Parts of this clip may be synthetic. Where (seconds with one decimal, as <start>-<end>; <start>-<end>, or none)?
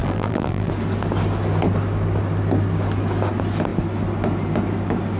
0.0-0.7